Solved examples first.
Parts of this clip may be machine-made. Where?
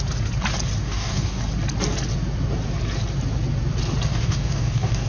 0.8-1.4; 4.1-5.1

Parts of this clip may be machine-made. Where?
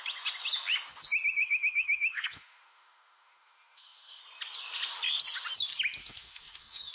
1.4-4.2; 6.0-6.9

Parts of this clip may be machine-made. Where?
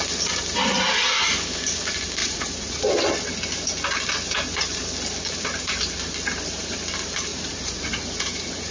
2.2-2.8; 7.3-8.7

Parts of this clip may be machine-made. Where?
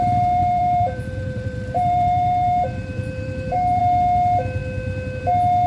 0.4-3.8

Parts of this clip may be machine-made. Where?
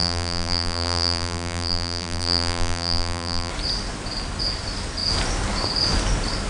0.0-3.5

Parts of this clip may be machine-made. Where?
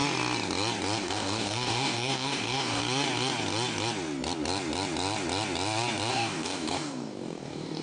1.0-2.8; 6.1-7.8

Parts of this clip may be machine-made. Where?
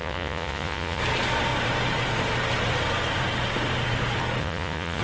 0.0-1.0; 4.4-5.0